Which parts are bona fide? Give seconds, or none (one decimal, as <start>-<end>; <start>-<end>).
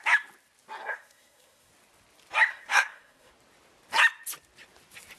0.0-0.8; 1.7-2.5; 3.3-5.2